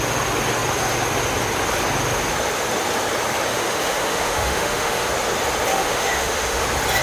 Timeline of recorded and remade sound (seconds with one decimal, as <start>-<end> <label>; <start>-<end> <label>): 0.0-3.5 recorded; 3.5-5.1 remade; 5.1-5.7 recorded; 5.7-6.6 remade; 6.6-7.0 recorded